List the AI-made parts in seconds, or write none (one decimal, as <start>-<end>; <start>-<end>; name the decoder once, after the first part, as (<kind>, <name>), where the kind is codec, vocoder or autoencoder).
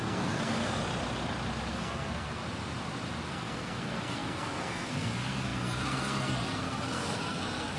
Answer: 0.0-0.8 (codec, SNAC); 1.7-2.4; 3.3-7.8